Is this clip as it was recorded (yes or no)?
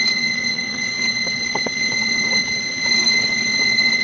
no